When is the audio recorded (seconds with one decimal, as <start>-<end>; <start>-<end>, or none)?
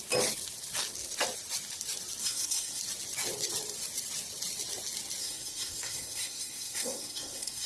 0.0-2.2; 2.8-5.2